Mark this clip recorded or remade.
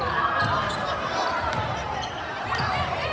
remade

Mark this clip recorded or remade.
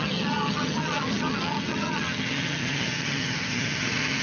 remade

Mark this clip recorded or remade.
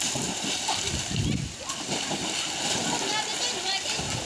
recorded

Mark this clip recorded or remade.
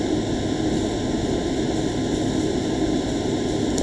recorded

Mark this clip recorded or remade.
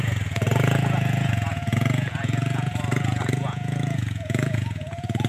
remade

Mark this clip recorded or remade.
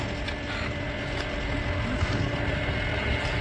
recorded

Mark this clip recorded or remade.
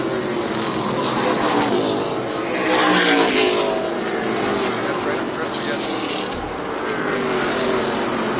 recorded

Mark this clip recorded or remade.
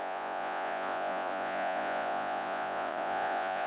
remade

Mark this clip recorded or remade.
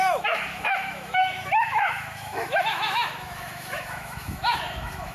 remade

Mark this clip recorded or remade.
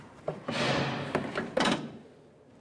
recorded